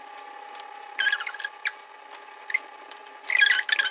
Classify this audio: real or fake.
real